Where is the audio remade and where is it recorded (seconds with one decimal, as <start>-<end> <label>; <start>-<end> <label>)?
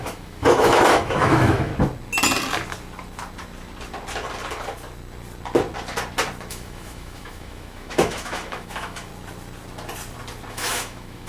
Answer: 0.0-1.7 remade; 1.7-6.5 recorded; 6.5-9.1 remade; 9.1-10.5 recorded; 10.5-11.3 remade